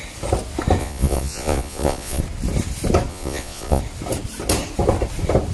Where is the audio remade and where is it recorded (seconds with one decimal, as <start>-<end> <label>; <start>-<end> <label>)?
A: 0.0-0.8 recorded; 0.8-2.2 remade; 2.2-3.1 recorded; 3.1-3.8 remade; 3.8-5.5 recorded